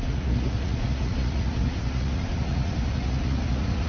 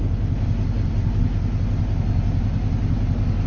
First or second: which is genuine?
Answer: second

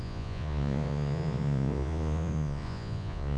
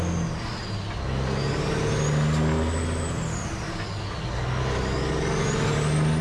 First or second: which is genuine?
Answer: second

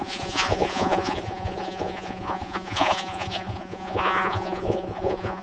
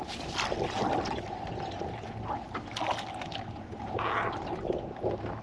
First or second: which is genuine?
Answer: second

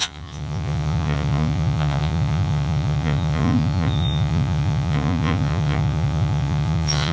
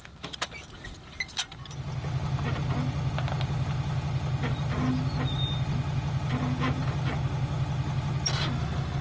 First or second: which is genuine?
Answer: second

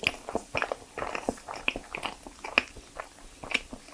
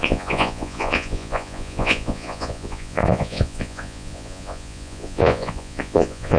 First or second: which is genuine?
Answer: first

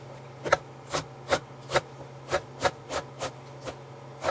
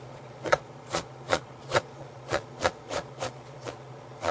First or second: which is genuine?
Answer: first